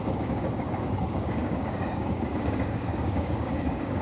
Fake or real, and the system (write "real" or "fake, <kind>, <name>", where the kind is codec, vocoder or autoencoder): fake, codec, DAC